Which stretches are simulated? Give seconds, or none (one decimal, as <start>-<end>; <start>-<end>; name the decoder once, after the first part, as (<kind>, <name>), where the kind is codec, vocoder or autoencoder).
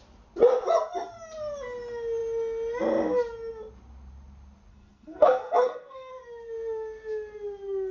4.7-6.1 (codec, SNAC)